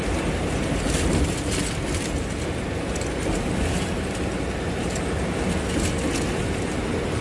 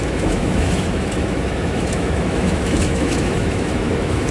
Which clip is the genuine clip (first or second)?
first